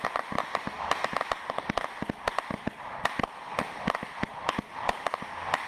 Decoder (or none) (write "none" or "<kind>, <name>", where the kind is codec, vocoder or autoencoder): none